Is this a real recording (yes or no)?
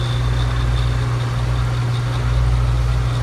yes